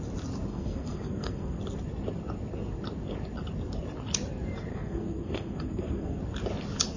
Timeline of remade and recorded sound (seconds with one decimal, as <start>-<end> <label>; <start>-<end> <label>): 0.0-0.5 recorded; 0.5-1.6 remade; 1.6-4.7 recorded; 4.7-6.2 remade; 6.2-7.0 recorded